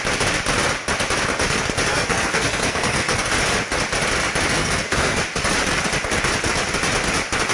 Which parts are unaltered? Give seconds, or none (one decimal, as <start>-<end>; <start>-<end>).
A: 0.0-1.9; 3.3-4.6; 5.2-7.5